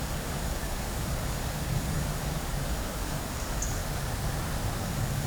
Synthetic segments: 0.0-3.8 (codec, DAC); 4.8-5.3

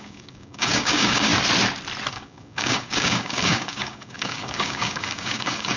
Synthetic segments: 0.0-1.3 (codec, DAC); 2.1-5.8